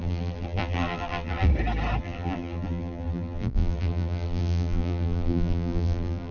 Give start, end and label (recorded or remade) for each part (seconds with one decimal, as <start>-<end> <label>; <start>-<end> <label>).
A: 0.0-1.5 remade; 1.5-2.0 recorded; 2.0-6.3 remade